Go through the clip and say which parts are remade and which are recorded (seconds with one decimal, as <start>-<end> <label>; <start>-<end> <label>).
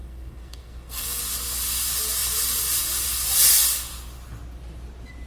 0.0-1.2 remade; 1.2-5.3 recorded